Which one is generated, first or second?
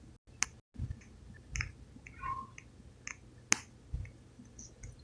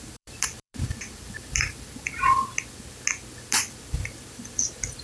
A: second